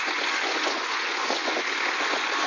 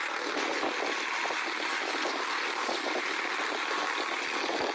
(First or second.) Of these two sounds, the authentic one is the second